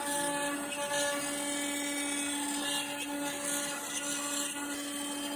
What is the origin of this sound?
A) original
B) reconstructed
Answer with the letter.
A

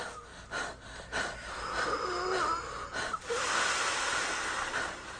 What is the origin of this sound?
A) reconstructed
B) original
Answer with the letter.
B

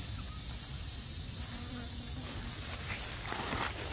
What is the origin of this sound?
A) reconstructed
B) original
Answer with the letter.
B